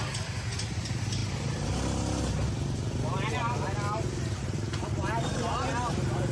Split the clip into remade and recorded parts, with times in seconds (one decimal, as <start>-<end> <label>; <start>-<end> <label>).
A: 0.0-6.3 recorded